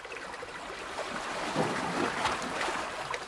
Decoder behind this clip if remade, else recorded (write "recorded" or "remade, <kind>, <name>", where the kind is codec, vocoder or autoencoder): recorded